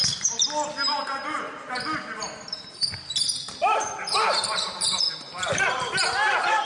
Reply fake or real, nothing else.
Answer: fake